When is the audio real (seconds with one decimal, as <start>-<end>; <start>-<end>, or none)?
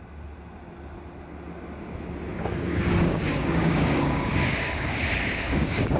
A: 0.0-2.3